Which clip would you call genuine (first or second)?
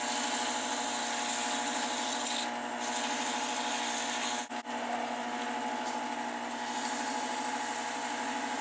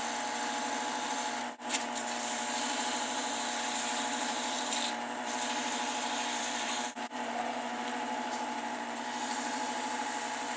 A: first